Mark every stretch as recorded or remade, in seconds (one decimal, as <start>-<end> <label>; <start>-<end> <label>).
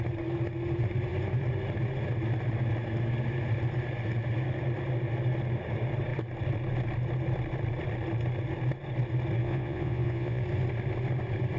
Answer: 0.0-9.4 recorded; 9.4-10.4 remade; 10.4-11.6 recorded